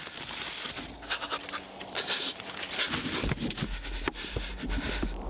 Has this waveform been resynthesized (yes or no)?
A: no